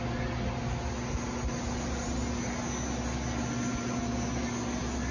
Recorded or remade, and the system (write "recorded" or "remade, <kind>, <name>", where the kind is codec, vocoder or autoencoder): recorded